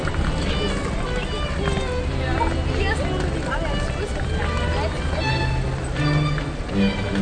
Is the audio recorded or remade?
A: recorded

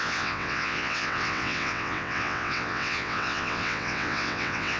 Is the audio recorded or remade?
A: remade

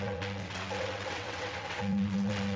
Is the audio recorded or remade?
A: remade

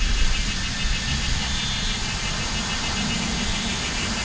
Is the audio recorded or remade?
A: recorded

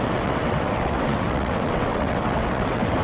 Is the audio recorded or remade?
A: remade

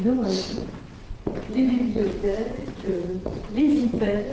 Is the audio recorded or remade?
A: remade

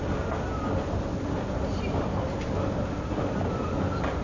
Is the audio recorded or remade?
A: recorded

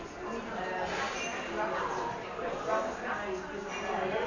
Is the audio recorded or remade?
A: recorded